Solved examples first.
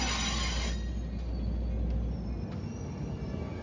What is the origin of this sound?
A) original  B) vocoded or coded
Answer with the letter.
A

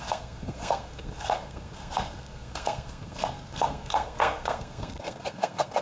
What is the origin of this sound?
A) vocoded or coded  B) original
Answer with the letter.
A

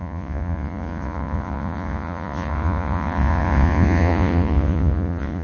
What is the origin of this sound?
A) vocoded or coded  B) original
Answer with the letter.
A